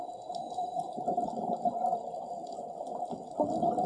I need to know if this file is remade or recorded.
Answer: recorded